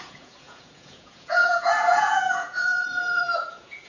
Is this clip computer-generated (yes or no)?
yes